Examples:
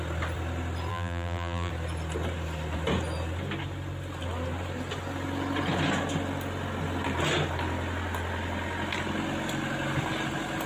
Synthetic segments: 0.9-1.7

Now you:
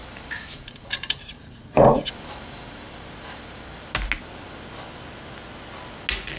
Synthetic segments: 0.0-3.8

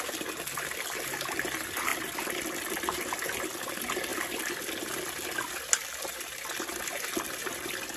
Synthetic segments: none

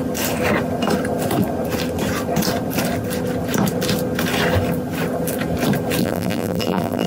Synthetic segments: 6.0-7.1